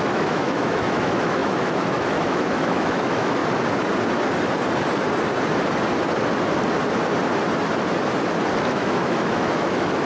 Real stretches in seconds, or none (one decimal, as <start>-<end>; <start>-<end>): 3.4-8.6